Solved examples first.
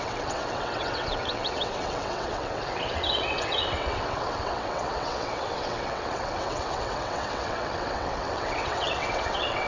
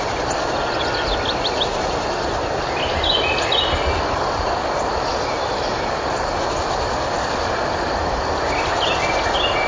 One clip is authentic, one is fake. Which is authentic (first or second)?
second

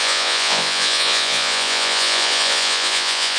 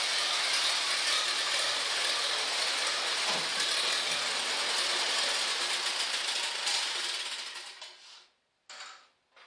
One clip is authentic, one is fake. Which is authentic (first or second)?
second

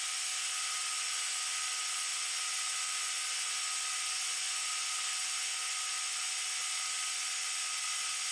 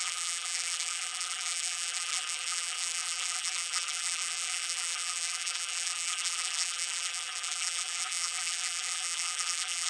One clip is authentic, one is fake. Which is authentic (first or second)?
first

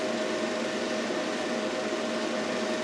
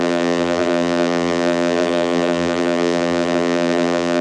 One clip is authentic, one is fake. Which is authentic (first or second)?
first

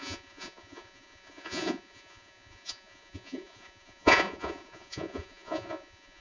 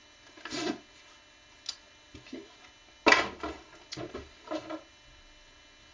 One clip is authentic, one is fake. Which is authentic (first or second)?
second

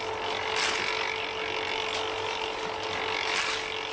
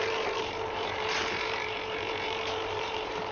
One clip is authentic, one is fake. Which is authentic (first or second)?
first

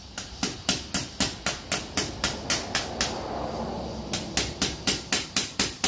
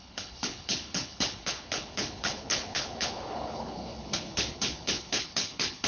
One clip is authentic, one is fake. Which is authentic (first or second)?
first